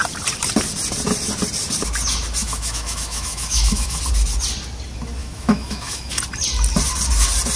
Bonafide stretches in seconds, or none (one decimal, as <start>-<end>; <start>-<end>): 0.0-2.4; 4.0-5.2; 6.2-7.6